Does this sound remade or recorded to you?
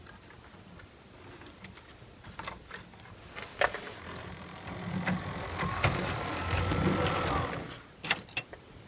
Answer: recorded